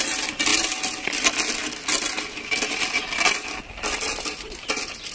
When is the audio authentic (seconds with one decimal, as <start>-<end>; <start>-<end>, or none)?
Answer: 0.0-5.1